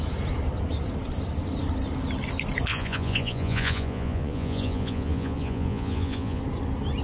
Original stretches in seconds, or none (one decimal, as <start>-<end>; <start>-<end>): 0.0-2.7; 6.4-7.0